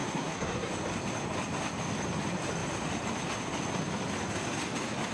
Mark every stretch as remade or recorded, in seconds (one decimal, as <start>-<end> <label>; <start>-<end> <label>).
0.0-0.7 remade; 0.7-5.1 recorded

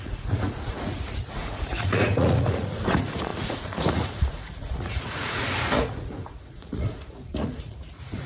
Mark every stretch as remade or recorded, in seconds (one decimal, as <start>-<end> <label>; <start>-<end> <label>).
0.0-8.3 remade

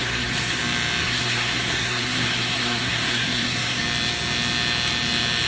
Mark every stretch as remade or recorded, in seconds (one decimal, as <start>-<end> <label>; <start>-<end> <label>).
0.0-0.6 remade; 0.6-1.0 recorded; 1.0-3.8 remade; 3.8-5.5 recorded

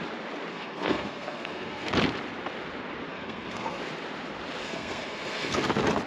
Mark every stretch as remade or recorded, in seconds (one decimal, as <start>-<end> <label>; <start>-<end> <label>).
0.0-0.5 recorded; 0.5-1.9 remade; 1.9-3.1 recorded; 3.1-3.8 remade; 3.8-4.6 recorded; 4.6-5.6 remade; 5.6-6.1 recorded

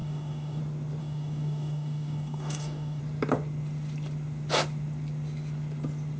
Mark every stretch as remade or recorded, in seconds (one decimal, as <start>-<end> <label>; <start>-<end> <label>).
0.0-0.6 remade; 0.6-1.0 recorded; 1.0-3.0 remade; 3.0-6.2 recorded

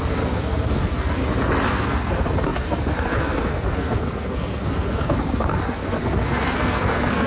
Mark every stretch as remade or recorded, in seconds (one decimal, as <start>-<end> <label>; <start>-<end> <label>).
0.0-1.2 remade; 1.2-1.7 recorded; 1.7-7.3 remade

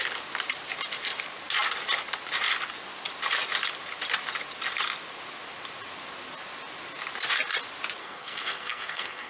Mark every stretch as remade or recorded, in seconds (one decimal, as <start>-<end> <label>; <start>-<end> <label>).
0.0-8.0 recorded; 8.0-9.3 remade